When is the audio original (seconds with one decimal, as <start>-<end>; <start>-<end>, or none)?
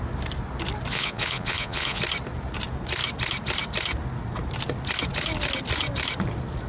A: 0.0-0.9; 2.0-6.7